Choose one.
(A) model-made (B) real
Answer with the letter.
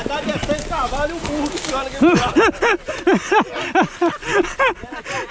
B